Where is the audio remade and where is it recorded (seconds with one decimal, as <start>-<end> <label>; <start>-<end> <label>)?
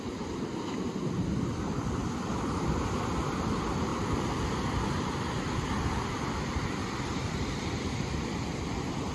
0.0-2.0 recorded; 2.0-2.9 remade; 2.9-6.8 recorded; 6.8-8.2 remade; 8.2-9.1 recorded